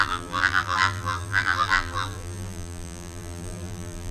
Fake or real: fake